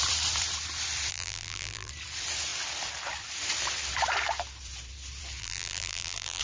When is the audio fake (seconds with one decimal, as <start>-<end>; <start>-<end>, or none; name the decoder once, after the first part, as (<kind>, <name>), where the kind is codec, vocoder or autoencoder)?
1.1-1.9 (vocoder, BigVGAN v2); 5.4-6.4